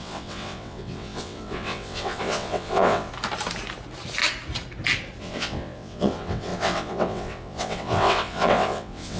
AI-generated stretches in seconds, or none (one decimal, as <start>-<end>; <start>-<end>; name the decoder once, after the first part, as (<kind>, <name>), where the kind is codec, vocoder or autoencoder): 0.0-3.1 (vocoder, WaveNeXt); 5.2-9.2